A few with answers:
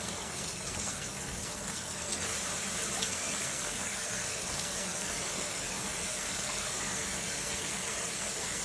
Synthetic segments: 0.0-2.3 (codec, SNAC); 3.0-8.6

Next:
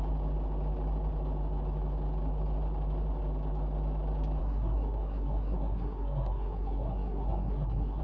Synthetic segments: 4.4-8.0 (codec, SNAC)

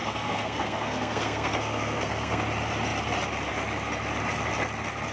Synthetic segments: 0.0-2.4 (codec, SNAC)

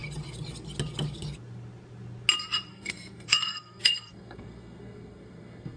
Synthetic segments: 2.7-5.8 (codec, SNAC)

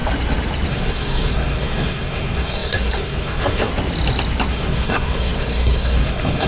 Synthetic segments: 0.7-3.7 (codec, SNAC); 4.5-6.5

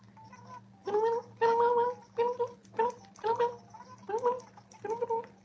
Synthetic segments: none